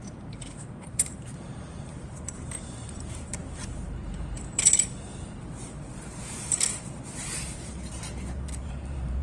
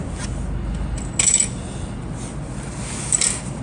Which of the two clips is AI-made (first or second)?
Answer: first